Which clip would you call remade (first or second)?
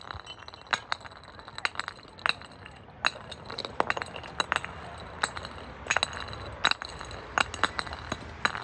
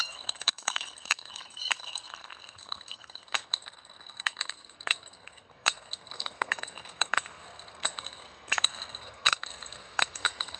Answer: second